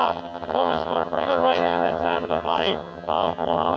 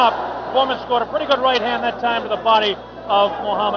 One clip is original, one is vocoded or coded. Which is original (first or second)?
second